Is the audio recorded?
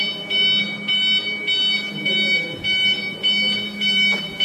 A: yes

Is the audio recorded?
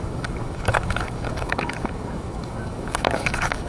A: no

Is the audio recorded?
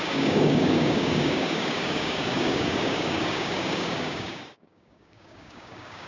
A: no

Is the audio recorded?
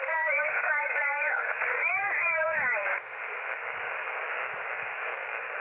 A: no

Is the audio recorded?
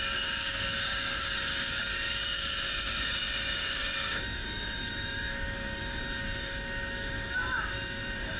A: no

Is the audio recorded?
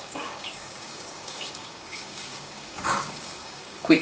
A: no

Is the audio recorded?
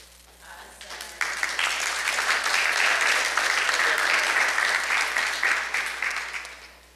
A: yes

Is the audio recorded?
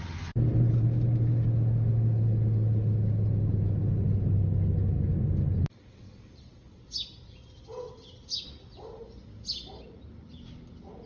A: yes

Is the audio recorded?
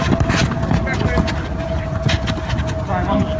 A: yes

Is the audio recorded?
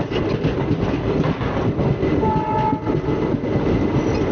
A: yes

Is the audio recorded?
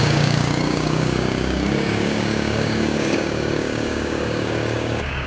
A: no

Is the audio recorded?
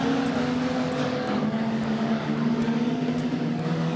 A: no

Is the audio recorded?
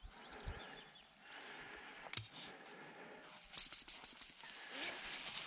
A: yes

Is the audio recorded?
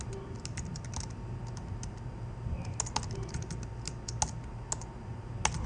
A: yes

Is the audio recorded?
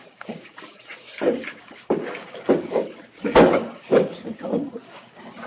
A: no